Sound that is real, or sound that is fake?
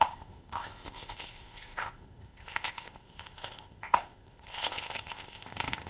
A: fake